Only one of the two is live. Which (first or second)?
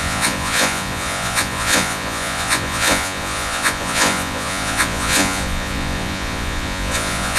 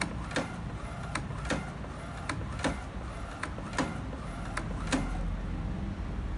second